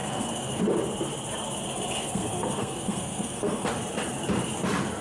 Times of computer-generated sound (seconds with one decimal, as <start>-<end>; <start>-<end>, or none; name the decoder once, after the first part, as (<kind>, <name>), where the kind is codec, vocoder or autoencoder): 0.0-0.6 (codec, SNAC); 2.0-3.7